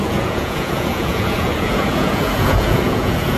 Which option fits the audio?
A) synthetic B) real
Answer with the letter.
A